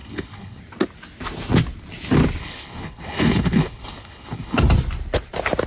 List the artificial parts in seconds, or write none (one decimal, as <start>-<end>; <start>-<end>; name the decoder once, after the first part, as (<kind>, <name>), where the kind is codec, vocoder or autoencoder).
0.0-0.6 (codec, HILCodec); 2.4-4.6